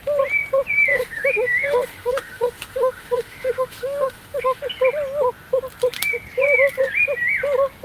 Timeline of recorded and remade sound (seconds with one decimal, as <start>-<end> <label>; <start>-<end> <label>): 0.0-0.9 recorded; 0.9-4.6 remade; 4.6-7.8 recorded